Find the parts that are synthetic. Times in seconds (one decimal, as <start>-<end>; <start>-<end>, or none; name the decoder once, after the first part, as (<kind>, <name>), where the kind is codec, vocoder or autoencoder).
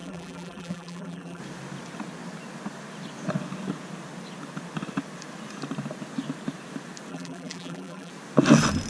0.0-1.4 (vocoder, BigVGAN v2); 7.1-8.1